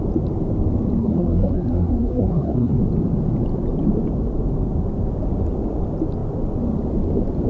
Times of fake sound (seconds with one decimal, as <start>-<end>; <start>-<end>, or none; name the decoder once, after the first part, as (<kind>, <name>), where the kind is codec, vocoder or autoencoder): 1.0-2.8 (codec, SNAC)